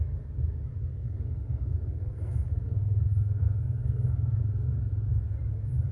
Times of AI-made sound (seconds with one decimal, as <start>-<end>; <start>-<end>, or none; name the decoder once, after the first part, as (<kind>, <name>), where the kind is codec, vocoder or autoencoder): 0.9-4.4 (codec, SNAC)